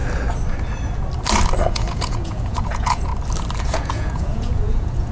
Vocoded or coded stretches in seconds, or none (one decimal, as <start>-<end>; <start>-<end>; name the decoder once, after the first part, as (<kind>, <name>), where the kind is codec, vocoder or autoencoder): 1.7-3.1 (vocoder, Vocos); 3.6-5.1